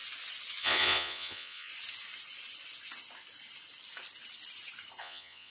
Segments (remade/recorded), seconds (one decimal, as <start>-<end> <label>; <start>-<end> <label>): 0.0-0.6 recorded; 0.6-1.7 remade; 1.7-5.0 recorded; 5.0-5.5 remade